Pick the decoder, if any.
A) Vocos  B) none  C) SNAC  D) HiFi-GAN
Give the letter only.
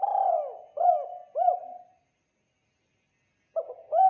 B